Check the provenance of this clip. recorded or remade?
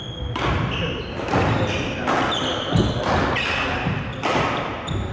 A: recorded